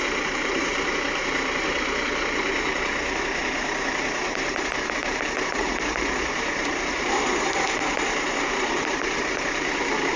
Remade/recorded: remade